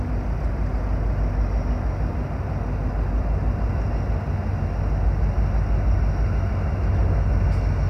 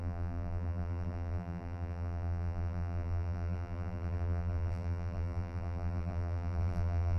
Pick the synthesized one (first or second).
second